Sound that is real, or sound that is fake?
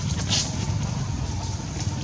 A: real